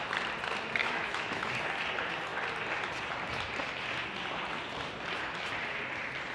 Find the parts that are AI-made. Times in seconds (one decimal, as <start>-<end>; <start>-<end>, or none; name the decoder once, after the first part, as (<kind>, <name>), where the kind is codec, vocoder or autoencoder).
0.8-1.5 (autoencoder, DAC-VAE)